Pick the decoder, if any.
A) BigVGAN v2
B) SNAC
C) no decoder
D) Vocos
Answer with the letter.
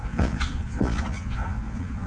D